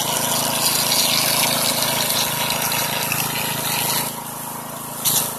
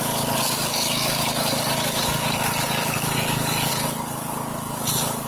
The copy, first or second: second